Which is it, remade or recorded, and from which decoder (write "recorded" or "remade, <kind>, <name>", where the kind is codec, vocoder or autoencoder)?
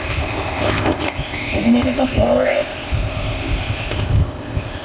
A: remade, codec, ZipCodec